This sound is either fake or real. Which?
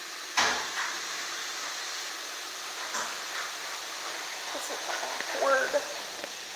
real